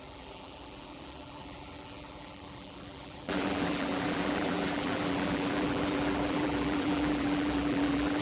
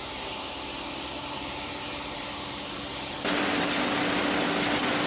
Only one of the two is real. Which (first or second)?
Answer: second